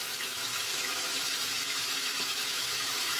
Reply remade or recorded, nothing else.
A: remade